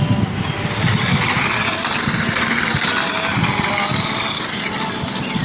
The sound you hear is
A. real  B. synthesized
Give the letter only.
A